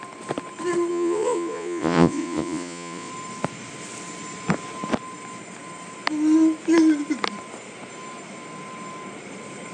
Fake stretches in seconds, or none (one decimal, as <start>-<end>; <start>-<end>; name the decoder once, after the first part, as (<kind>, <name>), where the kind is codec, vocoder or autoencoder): 0.9-3.1 (vocoder, Vocos)

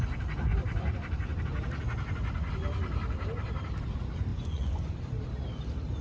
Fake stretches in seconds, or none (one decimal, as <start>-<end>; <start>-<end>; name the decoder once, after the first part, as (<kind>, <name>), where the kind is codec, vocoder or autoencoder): 4.3-4.9 (vocoder, Vocos)

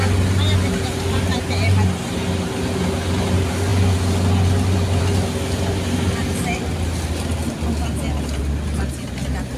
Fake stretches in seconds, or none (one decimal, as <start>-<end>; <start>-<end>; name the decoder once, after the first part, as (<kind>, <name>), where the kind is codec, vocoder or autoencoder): none

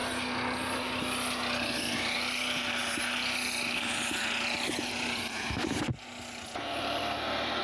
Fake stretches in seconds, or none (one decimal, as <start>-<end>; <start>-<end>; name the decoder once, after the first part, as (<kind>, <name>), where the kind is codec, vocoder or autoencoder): none

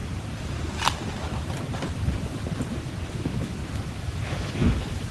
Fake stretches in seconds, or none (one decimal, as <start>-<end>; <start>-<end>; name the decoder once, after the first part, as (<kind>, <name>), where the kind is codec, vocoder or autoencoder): 3.1-5.1 (autoencoder, DAC-VAE)

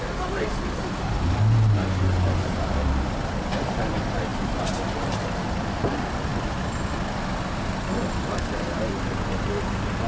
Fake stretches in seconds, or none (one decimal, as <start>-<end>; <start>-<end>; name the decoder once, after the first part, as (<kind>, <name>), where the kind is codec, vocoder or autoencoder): none